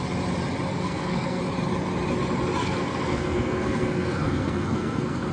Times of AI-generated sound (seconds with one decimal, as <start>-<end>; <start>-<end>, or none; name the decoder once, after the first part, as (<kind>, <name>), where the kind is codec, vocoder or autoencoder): 0.7-1.4 (codec, SNAC); 2.6-5.3